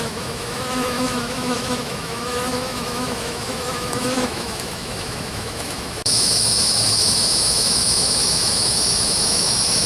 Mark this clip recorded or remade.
remade